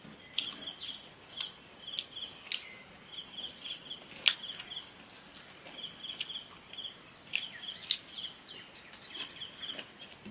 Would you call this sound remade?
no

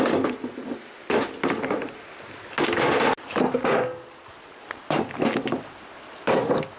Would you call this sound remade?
no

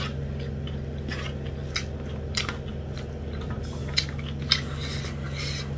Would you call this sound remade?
no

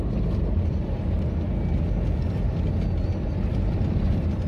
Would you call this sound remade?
no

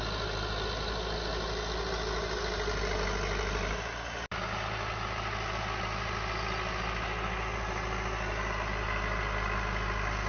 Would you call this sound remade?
no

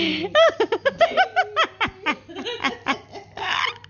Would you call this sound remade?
no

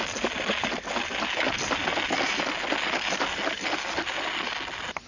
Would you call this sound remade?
no